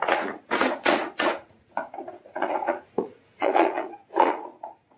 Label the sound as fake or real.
fake